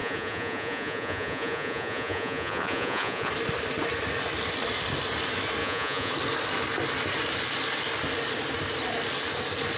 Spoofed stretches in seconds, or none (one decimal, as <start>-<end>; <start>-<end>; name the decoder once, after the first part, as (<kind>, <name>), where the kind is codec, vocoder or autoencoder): 0.0-3.3 (vocoder, Vocos); 5.6-6.1